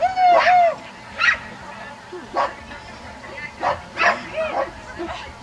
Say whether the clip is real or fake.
real